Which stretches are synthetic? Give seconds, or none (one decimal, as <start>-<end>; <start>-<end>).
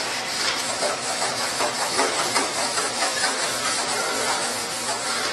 0.6-3.8